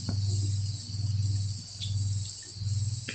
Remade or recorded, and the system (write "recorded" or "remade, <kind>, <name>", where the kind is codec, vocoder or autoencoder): recorded